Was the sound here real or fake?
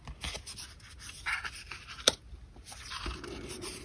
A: real